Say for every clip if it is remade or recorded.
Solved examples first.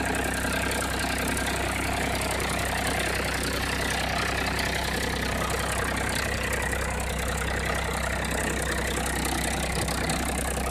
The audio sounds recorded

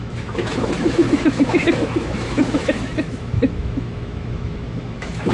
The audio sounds remade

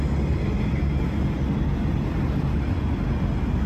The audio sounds recorded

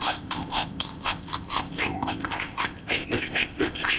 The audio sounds remade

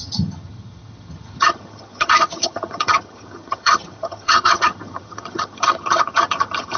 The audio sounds remade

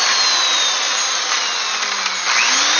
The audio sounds recorded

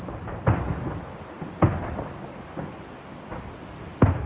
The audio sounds recorded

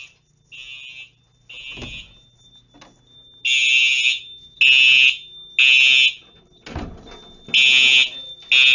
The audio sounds recorded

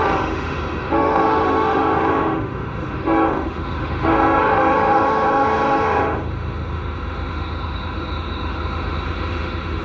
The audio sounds remade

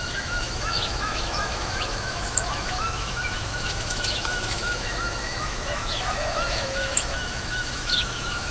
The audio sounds remade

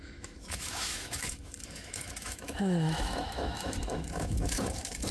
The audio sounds remade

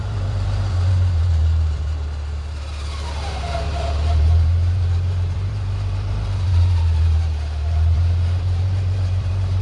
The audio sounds remade